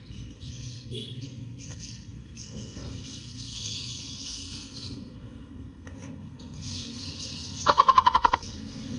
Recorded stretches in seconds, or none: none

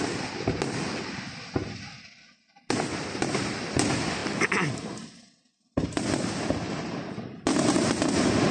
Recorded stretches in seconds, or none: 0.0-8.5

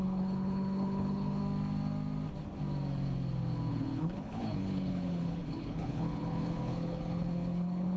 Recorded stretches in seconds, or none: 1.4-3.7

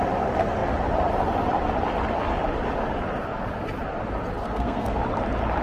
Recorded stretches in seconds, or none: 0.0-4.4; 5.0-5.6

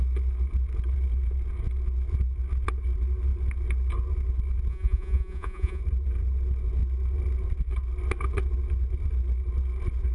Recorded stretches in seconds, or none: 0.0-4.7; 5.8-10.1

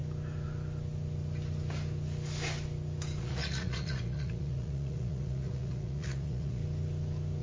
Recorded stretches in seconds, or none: 0.0-3.2; 6.6-7.4